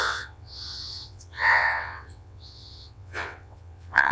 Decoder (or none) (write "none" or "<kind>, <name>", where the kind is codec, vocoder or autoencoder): vocoder, WaveNeXt